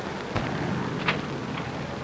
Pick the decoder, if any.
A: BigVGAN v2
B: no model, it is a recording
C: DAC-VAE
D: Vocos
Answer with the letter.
B